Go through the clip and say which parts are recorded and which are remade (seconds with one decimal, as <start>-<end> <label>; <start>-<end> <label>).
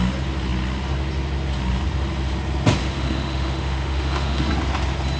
0.0-2.8 recorded; 2.8-4.5 remade; 4.5-5.2 recorded